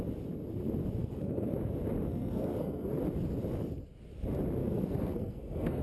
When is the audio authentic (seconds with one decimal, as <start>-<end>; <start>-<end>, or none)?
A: 0.0-1.0; 1.5-2.1; 2.9-4.6